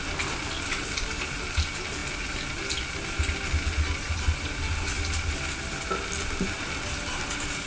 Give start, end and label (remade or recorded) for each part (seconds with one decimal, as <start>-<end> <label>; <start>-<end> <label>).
0.0-7.7 recorded